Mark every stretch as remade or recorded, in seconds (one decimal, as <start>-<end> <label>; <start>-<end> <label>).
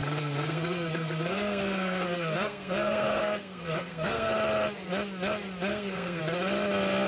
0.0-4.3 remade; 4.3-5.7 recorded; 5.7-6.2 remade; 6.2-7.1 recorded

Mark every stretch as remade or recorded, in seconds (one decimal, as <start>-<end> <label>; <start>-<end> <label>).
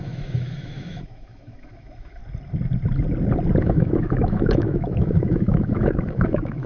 0.0-2.2 remade; 2.2-3.6 recorded; 3.6-6.7 remade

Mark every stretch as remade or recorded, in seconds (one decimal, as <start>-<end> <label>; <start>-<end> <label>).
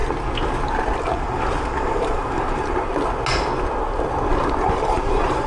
0.0-1.8 recorded; 1.8-2.9 remade; 2.9-4.4 recorded; 4.4-5.5 remade